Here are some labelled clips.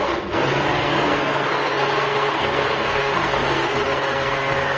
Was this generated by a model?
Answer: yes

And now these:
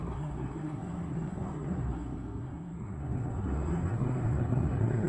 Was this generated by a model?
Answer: yes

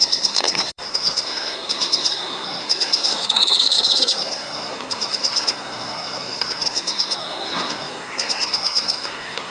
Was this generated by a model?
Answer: yes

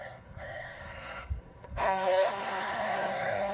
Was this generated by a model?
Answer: yes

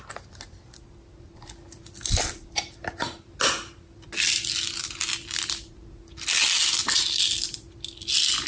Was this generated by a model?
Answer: no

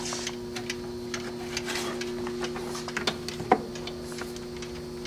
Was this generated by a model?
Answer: no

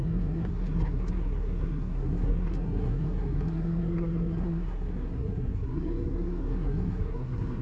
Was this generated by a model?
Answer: yes